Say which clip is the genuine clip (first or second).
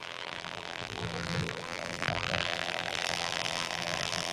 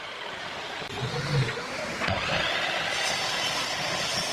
second